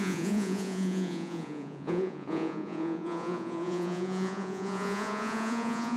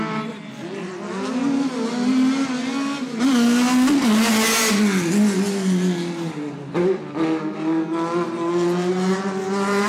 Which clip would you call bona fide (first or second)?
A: second